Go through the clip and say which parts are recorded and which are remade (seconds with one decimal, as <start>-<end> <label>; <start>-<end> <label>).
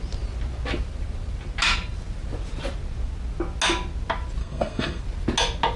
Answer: 0.0-4.4 recorded; 4.4-5.0 remade; 5.0-5.8 recorded